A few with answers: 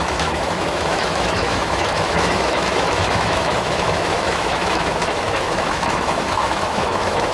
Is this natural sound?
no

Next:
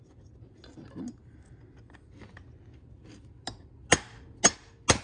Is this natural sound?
yes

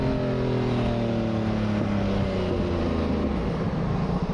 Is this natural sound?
yes